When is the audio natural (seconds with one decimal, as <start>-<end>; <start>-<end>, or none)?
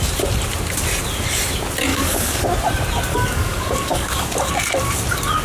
0.0-1.9; 2.4-3.1; 4.5-5.4